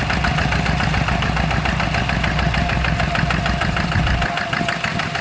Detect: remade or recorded recorded